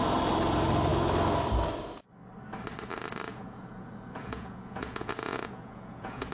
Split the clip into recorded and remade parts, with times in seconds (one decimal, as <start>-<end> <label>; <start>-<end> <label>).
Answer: 0.0-3.3 recorded; 3.3-6.3 remade